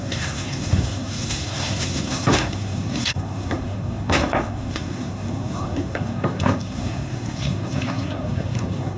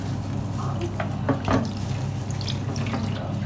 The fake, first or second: first